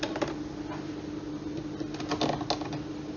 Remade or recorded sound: recorded